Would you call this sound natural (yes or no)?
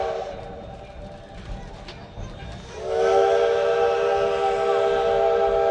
yes